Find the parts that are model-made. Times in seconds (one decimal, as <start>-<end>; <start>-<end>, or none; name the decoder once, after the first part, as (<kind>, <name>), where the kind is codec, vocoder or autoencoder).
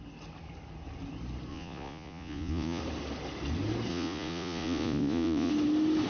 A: 1.5-2.8 (vocoder, Vocos); 3.9-5.5